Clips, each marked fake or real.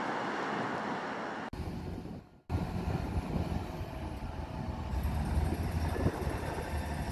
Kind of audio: real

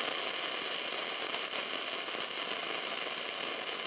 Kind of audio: real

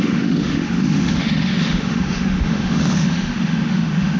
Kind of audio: fake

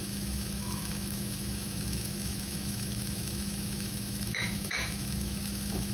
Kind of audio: fake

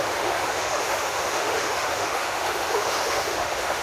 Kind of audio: fake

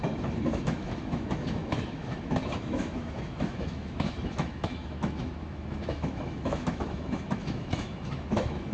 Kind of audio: fake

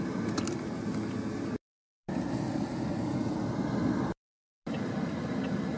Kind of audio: real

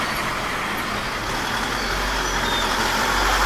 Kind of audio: real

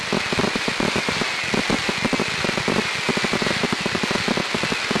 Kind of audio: real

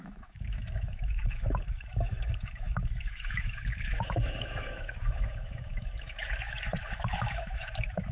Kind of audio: fake